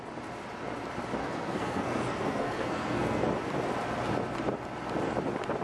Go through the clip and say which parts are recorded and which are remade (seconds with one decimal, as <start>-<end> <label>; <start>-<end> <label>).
0.0-1.2 recorded; 1.2-3.3 remade; 3.3-5.6 recorded